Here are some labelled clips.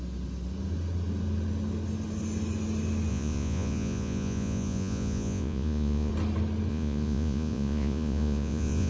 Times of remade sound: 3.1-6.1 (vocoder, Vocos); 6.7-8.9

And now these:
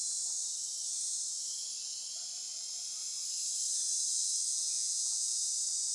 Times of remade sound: 4.5-5.4 (vocoder, Vocos)

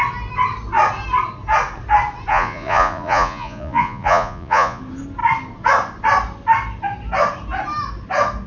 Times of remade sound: 2.3-4.8 (vocoder, Vocos)

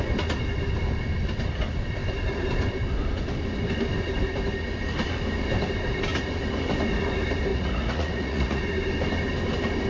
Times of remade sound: 7.5-8.6 (vocoder, Vocos)